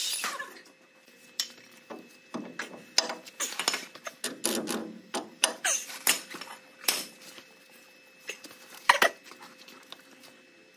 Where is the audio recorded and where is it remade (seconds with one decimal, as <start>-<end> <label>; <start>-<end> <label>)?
0.0-2.4 remade; 2.4-4.8 recorded; 4.8-9.8 remade; 9.8-10.8 recorded